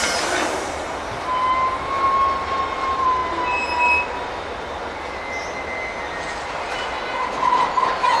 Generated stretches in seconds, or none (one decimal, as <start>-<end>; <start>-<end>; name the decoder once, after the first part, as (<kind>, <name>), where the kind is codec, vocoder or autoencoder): 0.0-0.7 (vocoder, BigVGAN v2)